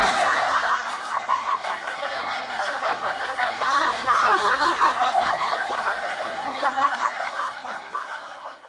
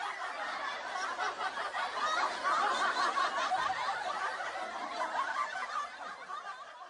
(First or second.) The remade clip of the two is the first